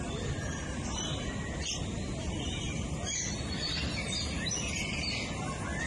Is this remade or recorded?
recorded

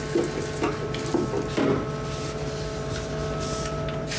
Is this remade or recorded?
recorded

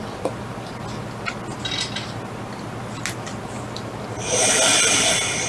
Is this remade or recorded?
recorded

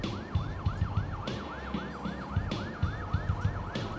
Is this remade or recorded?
recorded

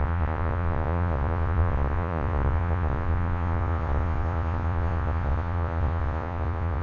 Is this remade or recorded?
remade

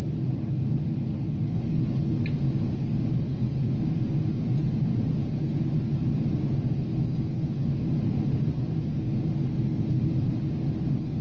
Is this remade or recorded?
recorded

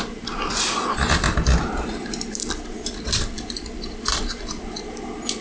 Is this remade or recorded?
recorded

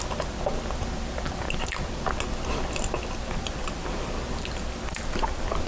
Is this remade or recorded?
recorded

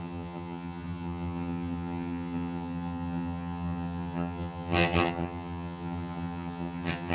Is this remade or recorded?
remade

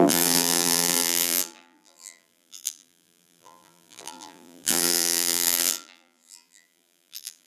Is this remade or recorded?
remade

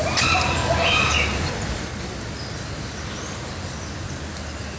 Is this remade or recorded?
recorded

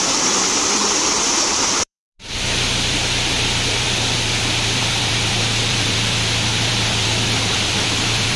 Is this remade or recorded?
remade